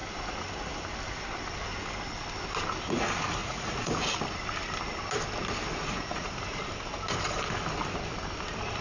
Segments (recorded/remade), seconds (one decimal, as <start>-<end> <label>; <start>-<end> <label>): 0.0-3.4 recorded; 3.4-3.9 remade; 3.9-5.8 recorded; 5.8-6.6 remade; 6.6-8.8 recorded